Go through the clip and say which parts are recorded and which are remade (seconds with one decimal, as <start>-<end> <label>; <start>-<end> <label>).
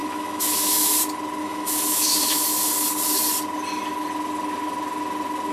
0.0-0.9 remade; 0.9-1.4 recorded; 1.4-2.7 remade; 2.7-5.5 recorded